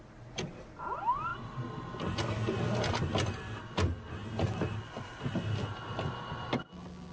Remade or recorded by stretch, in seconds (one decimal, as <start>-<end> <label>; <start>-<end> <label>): 0.0-7.1 recorded